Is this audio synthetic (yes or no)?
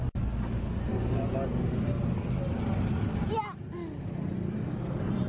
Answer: no